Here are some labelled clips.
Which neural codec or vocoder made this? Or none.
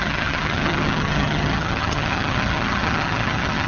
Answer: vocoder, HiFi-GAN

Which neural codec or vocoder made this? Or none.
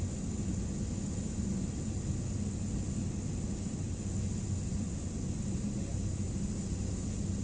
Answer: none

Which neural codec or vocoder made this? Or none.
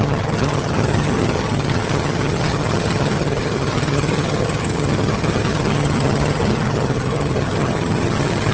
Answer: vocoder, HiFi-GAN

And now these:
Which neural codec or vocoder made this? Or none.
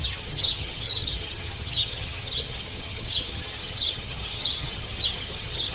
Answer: vocoder, HiFi-GAN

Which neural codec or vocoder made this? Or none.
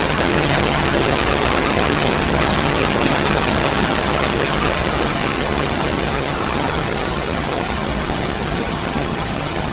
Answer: vocoder, HiFi-GAN